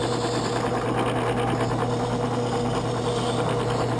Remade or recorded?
recorded